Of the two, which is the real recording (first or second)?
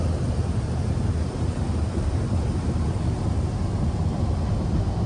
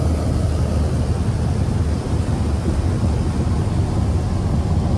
second